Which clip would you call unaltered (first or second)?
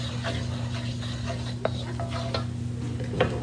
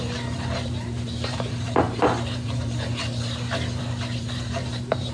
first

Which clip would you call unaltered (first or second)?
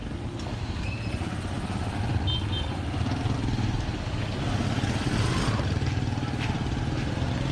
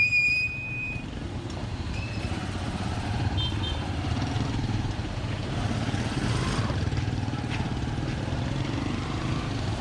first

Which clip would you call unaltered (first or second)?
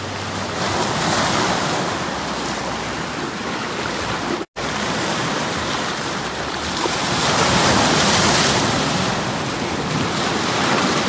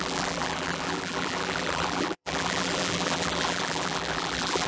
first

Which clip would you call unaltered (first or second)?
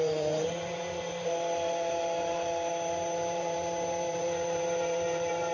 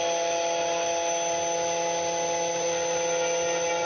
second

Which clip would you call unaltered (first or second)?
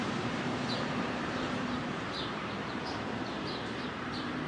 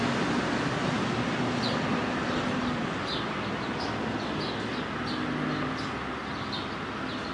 second